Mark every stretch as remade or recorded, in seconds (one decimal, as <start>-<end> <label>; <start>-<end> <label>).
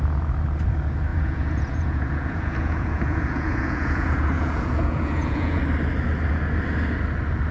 0.0-1.1 recorded; 1.1-5.6 remade; 5.6-7.5 recorded